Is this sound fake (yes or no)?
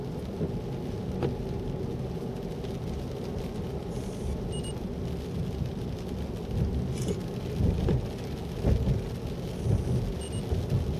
no